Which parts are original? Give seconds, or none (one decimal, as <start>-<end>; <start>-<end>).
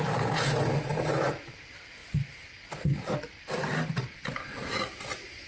0.0-5.5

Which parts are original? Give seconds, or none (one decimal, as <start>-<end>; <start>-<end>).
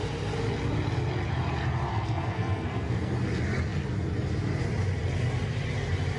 0.0-1.9; 3.1-6.2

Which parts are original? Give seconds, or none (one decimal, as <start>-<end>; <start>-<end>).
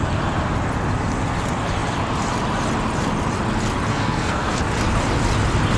0.0-3.9; 4.6-5.8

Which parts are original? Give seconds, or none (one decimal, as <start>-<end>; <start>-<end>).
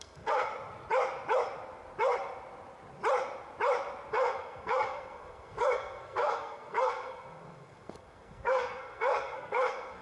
0.5-4.1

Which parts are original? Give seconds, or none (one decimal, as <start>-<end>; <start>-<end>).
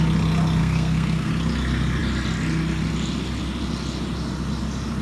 0.0-0.6; 1.3-5.0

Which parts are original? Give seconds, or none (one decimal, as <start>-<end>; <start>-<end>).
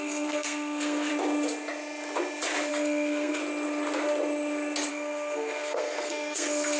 1.1-2.7; 3.4-4.9